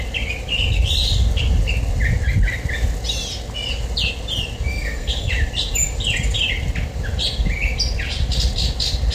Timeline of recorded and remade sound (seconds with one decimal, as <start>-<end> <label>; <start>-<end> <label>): 0.0-4.7 recorded; 4.7-5.3 remade; 5.3-9.1 recorded